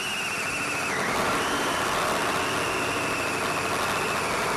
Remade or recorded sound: recorded